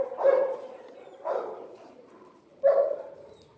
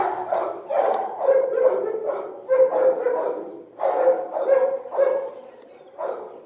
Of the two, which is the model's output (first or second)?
first